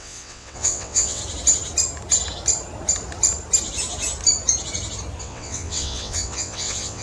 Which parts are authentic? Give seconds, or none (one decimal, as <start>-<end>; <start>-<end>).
1.2-5.2